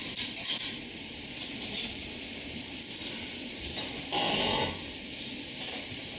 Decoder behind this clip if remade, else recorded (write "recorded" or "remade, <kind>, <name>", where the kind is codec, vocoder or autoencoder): remade, vocoder, BigVGAN v2